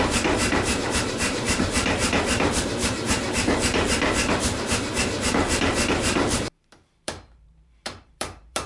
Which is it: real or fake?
fake